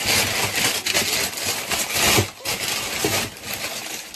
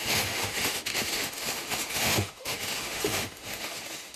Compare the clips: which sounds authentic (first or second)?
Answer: first